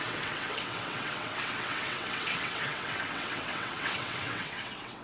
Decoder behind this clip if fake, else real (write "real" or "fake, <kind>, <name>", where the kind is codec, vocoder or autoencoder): fake, vocoder, WaveNeXt